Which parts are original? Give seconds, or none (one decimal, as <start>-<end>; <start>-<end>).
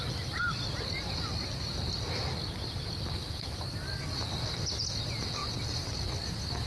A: 0.0-6.7